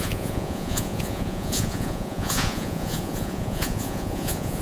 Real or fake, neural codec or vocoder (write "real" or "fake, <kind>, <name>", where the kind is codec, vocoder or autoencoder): fake, vocoder, Vocos